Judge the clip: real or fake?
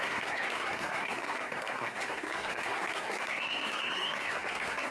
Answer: fake